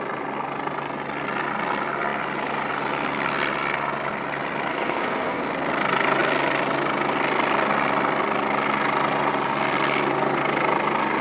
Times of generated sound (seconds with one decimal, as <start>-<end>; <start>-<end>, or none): 4.7-5.4